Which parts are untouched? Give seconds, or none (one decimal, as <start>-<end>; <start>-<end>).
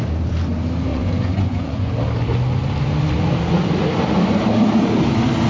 0.0-0.9; 1.9-5.5